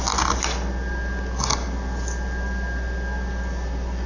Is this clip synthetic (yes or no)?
no